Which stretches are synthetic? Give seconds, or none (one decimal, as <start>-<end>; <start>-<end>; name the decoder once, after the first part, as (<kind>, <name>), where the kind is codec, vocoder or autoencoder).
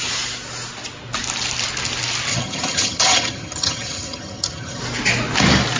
2.3-4.8 (vocoder, HiFi-GAN)